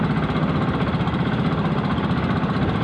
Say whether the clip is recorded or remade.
recorded